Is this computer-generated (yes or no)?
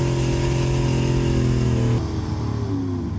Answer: no